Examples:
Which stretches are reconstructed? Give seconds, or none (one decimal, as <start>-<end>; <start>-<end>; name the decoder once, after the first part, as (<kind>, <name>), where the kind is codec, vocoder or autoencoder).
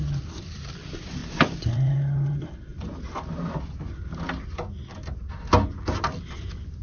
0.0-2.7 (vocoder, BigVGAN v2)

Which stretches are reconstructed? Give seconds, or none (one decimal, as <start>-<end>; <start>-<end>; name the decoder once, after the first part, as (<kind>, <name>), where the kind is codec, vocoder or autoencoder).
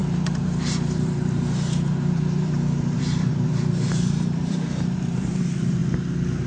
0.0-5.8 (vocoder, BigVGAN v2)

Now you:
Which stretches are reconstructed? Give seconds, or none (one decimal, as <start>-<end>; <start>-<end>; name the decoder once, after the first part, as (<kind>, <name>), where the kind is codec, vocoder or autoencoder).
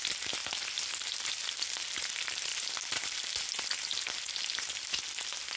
none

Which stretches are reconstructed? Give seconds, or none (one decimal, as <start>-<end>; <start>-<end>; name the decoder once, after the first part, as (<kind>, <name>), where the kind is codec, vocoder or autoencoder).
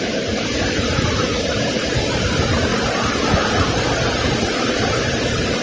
0.0-5.6 (vocoder, BigVGAN v2)